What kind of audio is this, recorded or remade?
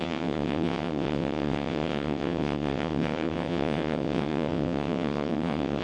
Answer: remade